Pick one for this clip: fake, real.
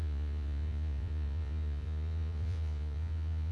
fake